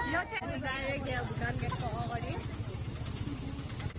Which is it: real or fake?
real